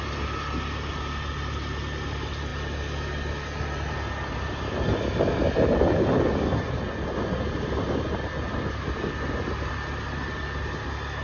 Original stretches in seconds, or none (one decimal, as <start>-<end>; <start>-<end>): 0.0-11.2